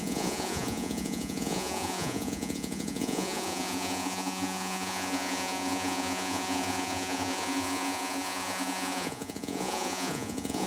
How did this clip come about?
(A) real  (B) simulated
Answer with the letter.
B